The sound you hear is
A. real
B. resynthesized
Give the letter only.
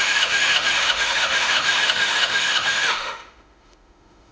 B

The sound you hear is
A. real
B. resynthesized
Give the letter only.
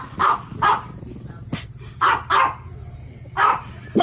A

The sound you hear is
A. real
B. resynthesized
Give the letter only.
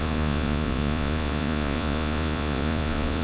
B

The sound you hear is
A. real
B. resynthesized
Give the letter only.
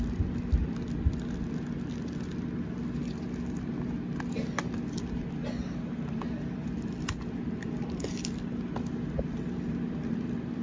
A